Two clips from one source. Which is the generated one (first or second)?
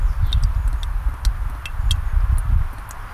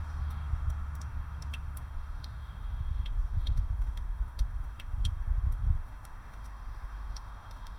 second